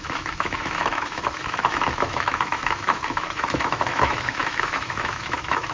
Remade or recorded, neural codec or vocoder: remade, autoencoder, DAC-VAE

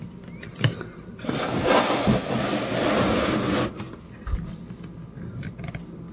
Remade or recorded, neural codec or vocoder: recorded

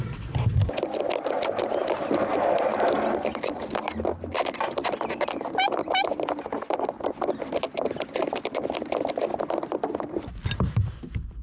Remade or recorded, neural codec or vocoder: recorded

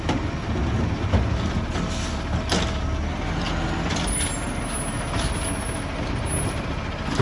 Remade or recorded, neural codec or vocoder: recorded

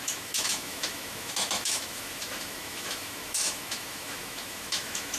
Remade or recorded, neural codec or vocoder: remade, autoencoder, DAC-VAE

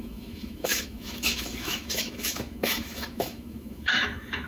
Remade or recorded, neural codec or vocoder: remade, autoencoder, DAC-VAE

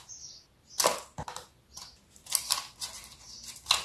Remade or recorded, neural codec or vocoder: recorded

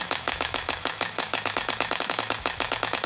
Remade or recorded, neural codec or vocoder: remade, autoencoder, DAC-VAE